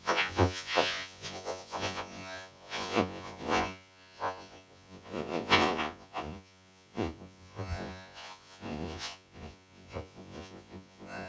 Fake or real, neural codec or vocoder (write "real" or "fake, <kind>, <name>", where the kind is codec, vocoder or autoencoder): fake, vocoder, Vocos